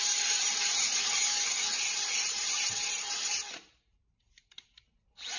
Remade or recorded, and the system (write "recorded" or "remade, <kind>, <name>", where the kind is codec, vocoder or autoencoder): remade, vocoder, BigVGAN v2